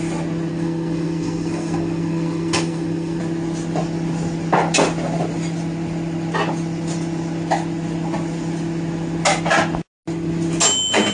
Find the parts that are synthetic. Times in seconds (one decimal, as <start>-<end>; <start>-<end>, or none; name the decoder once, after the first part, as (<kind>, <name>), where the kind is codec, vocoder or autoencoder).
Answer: 0.5-3.2 (codec, SNAC)